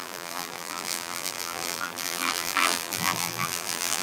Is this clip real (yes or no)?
no